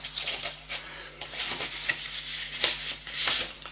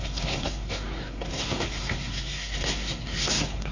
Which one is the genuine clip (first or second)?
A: first